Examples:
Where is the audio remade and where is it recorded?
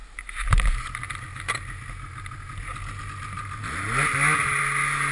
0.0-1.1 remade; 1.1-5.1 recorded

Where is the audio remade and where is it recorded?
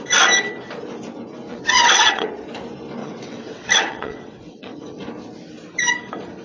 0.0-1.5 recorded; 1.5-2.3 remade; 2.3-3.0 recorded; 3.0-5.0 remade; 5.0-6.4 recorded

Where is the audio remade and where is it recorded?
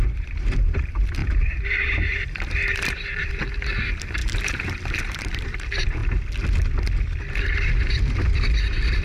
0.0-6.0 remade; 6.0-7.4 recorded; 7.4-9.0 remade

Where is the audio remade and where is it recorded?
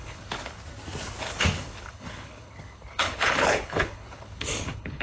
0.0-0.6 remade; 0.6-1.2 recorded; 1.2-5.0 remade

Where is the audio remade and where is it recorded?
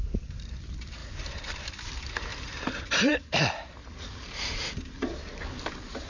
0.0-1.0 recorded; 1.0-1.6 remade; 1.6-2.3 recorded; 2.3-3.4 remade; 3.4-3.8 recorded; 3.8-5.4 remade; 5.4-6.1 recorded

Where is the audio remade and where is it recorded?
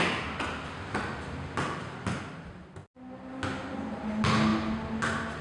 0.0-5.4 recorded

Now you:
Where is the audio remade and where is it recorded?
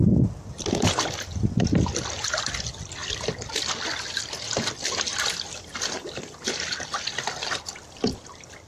0.0-5.7 recorded; 5.7-6.5 remade; 6.5-7.8 recorded; 7.8-8.7 remade